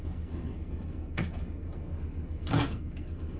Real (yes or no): no